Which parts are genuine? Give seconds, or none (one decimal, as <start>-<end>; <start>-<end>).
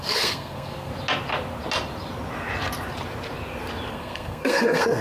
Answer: 0.9-3.9